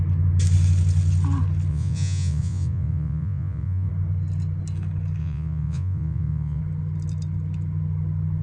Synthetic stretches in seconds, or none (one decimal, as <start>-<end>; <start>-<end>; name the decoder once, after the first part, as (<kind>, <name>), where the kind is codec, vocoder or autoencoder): 1.7-3.9 (vocoder, Vocos); 5.2-6.6